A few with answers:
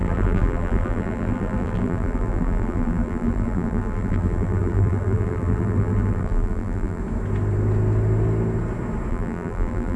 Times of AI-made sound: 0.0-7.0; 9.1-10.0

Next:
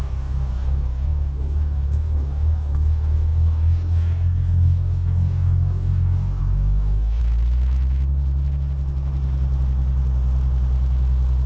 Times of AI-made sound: 0.0-7.2

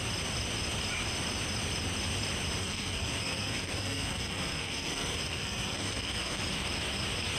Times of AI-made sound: 2.6-6.4

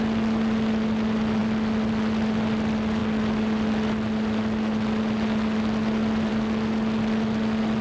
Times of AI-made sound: none

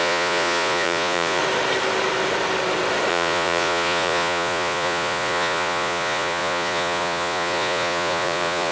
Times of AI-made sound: 0.0-1.4; 3.1-8.7

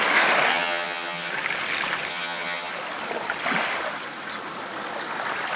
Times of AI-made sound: 0.5-1.3; 2.1-2.7